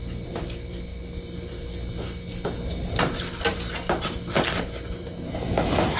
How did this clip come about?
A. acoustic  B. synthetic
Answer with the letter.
A